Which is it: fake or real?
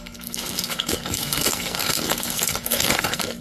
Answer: fake